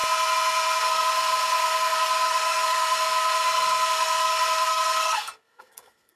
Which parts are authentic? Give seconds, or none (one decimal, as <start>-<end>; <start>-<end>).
0.0-0.8